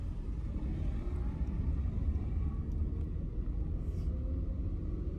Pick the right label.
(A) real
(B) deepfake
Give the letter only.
A